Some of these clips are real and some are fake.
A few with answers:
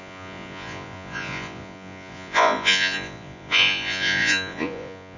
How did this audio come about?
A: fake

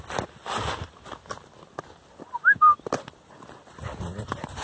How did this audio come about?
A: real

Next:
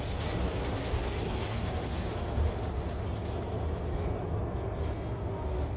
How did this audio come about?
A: real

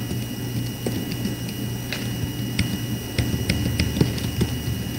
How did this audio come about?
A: real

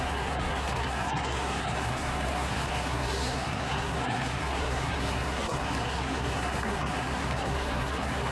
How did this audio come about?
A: fake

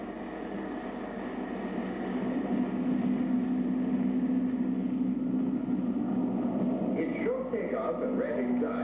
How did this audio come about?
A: real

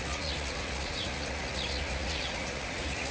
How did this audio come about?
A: fake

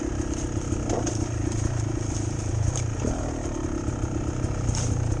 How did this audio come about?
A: real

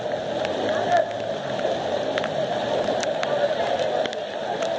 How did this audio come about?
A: real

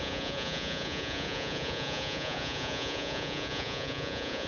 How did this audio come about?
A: fake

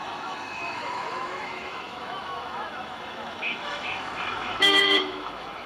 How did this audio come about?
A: fake